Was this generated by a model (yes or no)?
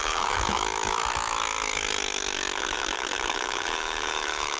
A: yes